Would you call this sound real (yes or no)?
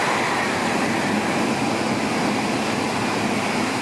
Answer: yes